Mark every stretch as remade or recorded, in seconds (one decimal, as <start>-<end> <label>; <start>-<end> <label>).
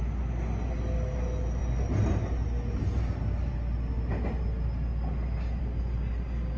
0.0-6.6 recorded